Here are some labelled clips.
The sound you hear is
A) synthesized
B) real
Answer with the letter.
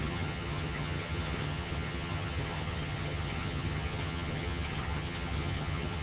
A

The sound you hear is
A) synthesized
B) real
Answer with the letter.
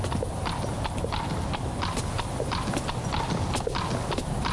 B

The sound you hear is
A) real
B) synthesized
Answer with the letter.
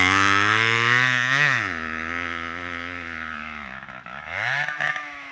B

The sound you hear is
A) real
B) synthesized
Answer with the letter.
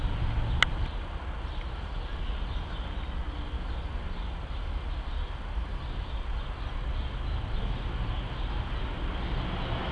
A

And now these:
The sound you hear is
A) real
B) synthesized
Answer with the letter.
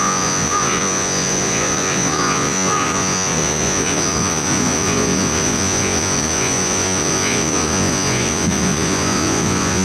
B